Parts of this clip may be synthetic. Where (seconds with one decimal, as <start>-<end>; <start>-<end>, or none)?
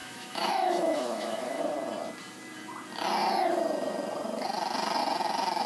0.0-1.6